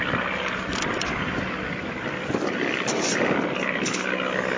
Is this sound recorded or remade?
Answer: recorded